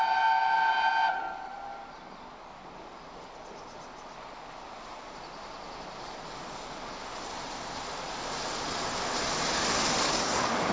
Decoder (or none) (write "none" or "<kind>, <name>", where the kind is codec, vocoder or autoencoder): none